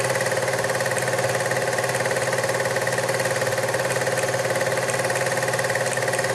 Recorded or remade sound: recorded